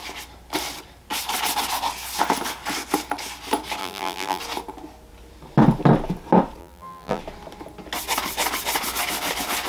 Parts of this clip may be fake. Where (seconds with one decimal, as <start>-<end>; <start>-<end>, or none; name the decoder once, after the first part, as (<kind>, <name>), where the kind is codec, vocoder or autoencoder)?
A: 3.8-4.4 (vocoder, BigVGAN v2); 6.6-7.2